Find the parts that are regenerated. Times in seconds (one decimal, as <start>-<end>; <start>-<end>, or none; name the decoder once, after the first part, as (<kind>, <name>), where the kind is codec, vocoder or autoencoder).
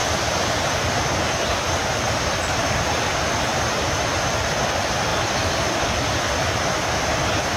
0.0-4.2 (vocoder, BigVGAN v2); 5.1-5.7